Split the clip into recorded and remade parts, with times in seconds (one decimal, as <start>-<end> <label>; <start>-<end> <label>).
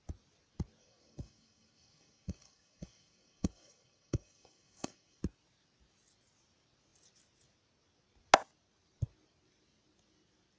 0.0-0.8 recorded; 0.8-5.2 remade; 5.2-10.6 recorded